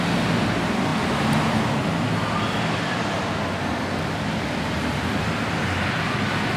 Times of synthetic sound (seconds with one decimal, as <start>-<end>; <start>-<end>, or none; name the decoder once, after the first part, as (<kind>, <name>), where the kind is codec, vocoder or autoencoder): 0.0-0.9 (vocoder, BigVGAN v2); 4.9-6.6